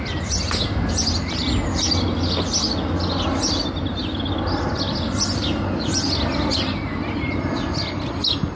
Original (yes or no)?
yes